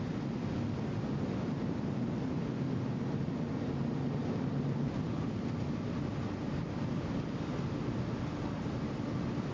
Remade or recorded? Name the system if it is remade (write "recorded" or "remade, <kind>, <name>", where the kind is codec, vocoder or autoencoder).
recorded